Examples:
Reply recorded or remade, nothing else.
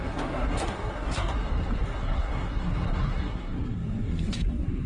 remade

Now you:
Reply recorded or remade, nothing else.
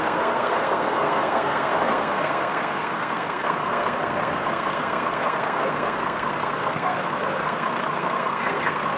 remade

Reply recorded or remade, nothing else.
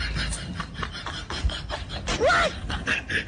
recorded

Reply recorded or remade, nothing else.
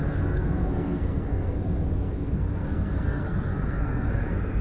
remade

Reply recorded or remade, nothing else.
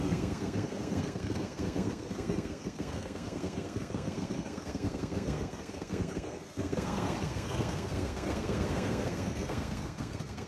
remade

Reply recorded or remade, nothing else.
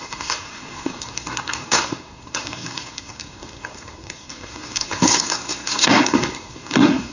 remade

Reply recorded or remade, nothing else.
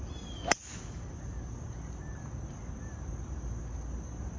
recorded